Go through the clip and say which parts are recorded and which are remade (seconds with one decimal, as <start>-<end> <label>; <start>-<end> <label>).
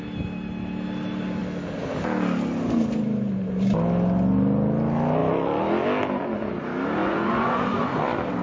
0.0-7.0 recorded; 7.0-8.0 remade; 8.0-8.4 recorded